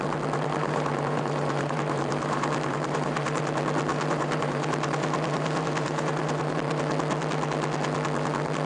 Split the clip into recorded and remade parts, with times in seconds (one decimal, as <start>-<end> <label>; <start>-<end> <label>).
0.0-0.6 recorded; 0.6-3.4 remade; 3.4-3.9 recorded; 3.9-6.8 remade; 6.8-8.7 recorded